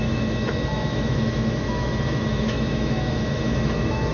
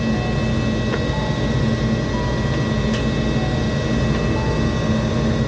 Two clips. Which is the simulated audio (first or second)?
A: first